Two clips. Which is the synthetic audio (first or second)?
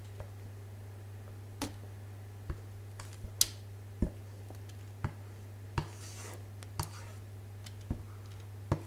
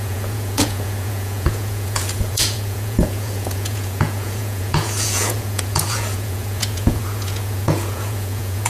second